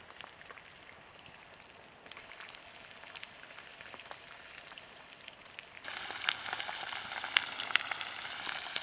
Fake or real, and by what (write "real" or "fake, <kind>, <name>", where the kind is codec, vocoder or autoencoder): real